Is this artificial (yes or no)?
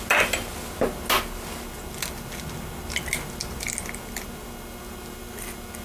no